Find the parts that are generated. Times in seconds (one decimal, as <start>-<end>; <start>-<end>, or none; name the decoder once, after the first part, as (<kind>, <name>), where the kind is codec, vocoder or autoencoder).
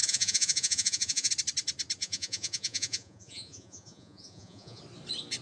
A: 0.0-1.3 (vocoder, Vocos); 2.0-4.8